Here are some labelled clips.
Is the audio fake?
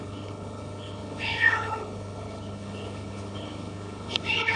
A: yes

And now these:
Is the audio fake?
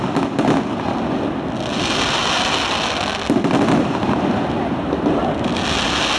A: no